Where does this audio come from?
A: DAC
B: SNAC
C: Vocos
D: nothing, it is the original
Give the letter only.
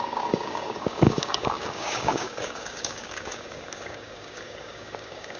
A